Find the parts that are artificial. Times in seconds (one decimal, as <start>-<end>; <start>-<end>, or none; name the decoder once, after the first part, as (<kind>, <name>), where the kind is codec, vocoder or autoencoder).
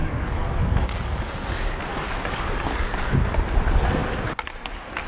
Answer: 0.0-1.3 (codec, DAC); 1.9-3.1